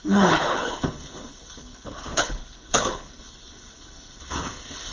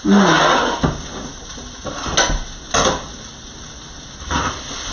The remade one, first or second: first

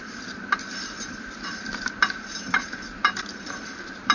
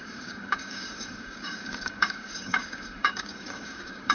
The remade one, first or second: second